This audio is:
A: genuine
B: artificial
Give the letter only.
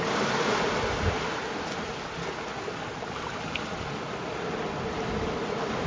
A